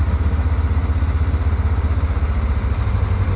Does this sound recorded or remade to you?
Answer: recorded